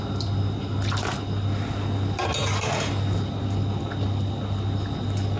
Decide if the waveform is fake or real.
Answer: real